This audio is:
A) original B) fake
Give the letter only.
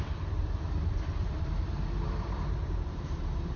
B